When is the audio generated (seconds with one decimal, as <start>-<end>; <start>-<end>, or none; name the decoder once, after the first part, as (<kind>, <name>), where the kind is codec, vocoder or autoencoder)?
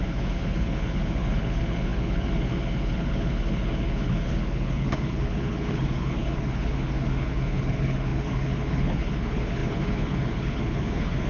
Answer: 0.0-11.3 (codec, HILCodec)